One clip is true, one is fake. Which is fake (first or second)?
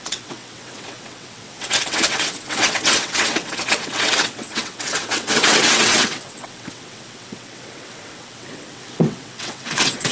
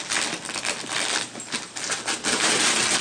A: first